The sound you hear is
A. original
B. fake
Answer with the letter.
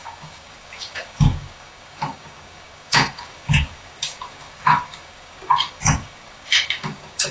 B